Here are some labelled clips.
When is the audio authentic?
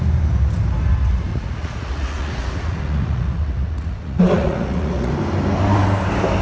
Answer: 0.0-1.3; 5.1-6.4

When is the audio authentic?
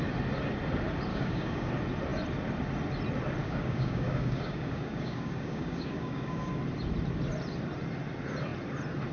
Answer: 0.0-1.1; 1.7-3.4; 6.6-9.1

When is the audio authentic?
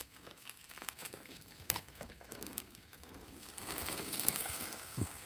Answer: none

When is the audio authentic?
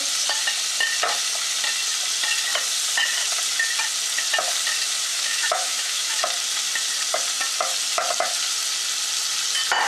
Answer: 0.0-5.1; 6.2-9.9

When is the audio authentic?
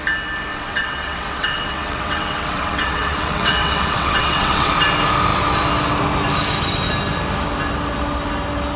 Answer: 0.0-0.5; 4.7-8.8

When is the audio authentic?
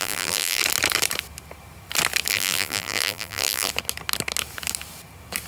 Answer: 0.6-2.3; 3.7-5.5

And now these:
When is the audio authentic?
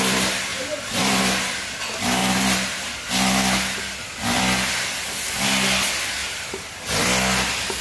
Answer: 0.0-0.5; 1.2-2.2; 3.1-6.2; 7.0-7.8